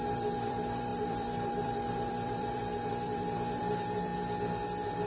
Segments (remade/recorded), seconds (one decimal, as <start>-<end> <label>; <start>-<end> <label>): 0.0-4.1 remade; 4.1-5.1 recorded